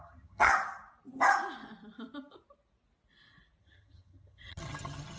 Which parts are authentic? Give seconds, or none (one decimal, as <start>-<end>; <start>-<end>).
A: 0.5-3.6